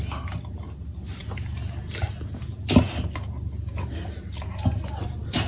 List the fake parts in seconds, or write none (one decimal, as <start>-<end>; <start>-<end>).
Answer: none